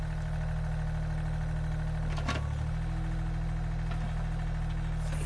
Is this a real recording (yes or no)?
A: yes